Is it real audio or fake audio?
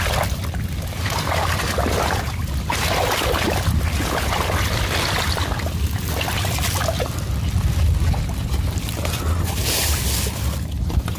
real